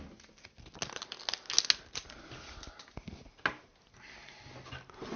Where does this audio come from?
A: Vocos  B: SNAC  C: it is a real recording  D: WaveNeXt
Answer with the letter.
C